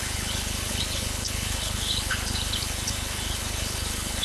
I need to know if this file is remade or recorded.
remade